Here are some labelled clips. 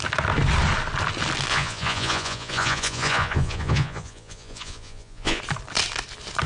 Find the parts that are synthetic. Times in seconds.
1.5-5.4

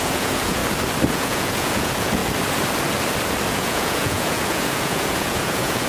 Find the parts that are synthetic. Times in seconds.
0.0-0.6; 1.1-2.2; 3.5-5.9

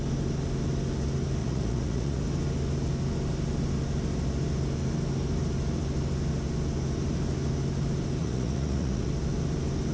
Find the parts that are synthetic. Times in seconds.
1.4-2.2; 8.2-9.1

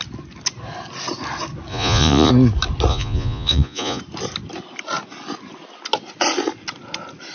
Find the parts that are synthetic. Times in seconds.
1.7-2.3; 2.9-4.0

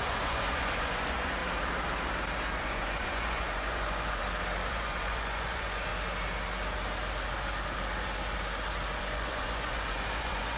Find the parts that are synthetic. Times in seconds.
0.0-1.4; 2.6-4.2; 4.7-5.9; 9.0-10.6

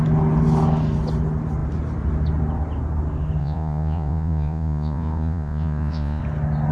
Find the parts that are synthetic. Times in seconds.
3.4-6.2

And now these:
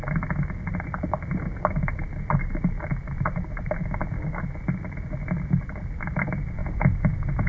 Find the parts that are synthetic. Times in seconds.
6.6-7.5